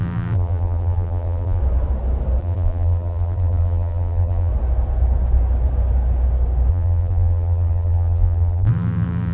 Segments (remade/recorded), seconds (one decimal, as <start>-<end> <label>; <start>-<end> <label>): 0.0-1.6 remade; 1.6-2.4 recorded; 2.4-4.5 remade; 4.5-6.7 recorded; 6.7-9.3 remade